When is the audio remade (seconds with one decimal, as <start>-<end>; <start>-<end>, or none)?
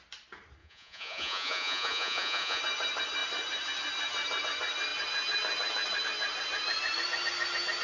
0.6-2.6